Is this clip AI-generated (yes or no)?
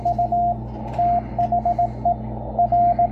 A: no